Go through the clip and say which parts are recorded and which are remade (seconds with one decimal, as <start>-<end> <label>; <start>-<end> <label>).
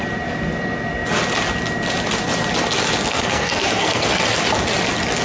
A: 0.0-3.0 recorded; 3.0-4.1 remade; 4.1-5.2 recorded